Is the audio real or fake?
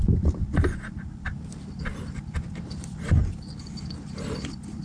real